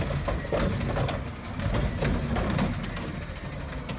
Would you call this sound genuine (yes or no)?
yes